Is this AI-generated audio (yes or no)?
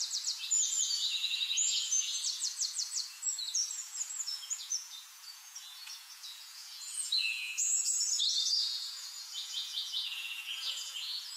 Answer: yes